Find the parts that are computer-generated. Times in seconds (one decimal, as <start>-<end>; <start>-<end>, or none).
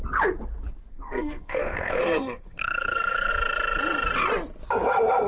0.9-3.3